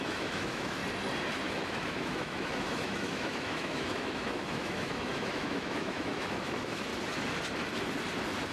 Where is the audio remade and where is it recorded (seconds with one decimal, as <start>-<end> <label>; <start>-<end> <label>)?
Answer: 0.0-0.8 remade; 0.8-1.5 recorded; 1.5-6.9 remade; 6.9-8.5 recorded